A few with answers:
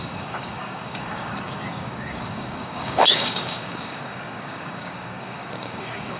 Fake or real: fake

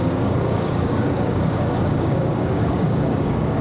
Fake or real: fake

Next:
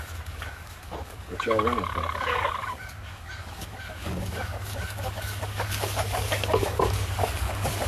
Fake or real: fake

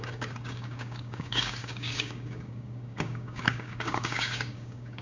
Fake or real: fake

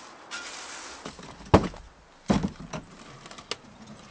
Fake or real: real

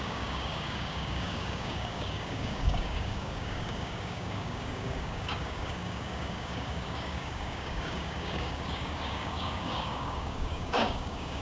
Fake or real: fake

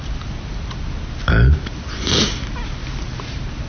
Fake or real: real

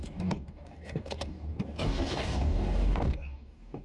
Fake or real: fake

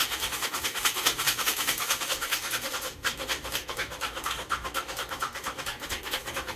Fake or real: fake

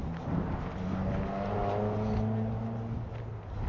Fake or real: real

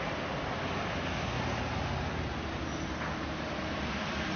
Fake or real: real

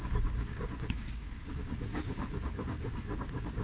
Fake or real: fake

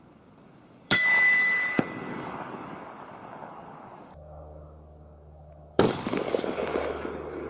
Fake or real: fake